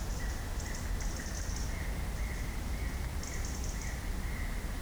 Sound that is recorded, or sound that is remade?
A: recorded